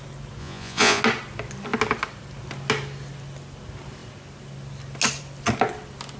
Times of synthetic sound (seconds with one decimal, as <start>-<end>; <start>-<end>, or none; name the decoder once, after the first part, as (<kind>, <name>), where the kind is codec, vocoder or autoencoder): 0.4-1.0 (vocoder, Vocos)